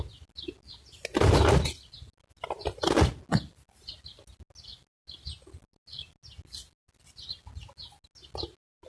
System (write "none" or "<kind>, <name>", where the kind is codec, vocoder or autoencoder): none